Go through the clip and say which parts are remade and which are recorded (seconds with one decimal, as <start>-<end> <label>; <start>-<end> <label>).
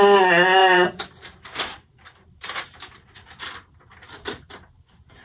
0.0-0.6 recorded; 0.6-3.4 remade; 3.4-5.2 recorded